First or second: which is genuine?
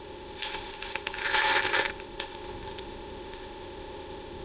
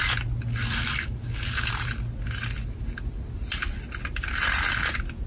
second